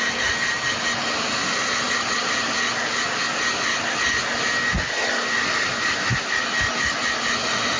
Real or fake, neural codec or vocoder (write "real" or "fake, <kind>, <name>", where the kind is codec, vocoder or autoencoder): real